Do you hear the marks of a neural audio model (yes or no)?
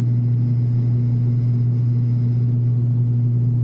no